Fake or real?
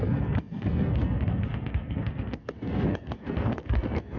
fake